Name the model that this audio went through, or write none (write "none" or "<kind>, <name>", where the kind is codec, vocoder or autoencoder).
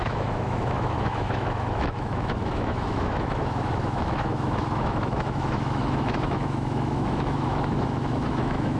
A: autoencoder, DAC-VAE